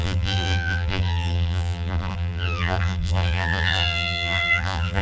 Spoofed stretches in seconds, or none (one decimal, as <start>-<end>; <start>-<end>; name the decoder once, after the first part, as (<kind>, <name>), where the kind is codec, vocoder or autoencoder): 0.0-5.0 (vocoder, BigVGAN v2)